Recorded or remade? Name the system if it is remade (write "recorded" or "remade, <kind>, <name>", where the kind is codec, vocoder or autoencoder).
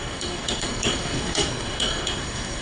remade, codec, SNAC